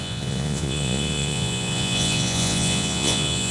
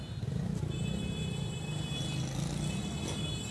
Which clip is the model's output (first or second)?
first